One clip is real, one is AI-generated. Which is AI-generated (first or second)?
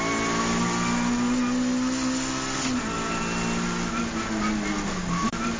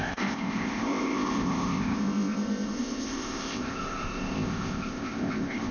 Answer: second